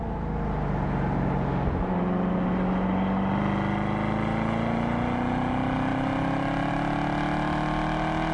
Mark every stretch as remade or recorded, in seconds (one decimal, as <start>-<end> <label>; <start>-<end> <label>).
0.0-8.3 recorded